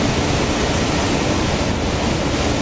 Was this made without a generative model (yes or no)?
yes